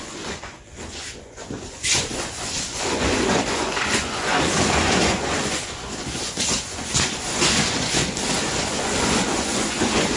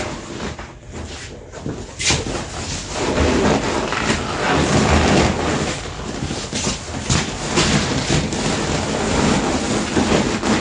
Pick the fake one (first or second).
first